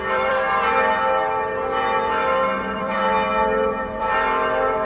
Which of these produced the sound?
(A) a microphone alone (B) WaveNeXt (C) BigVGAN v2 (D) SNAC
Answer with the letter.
C